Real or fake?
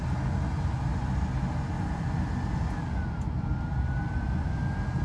real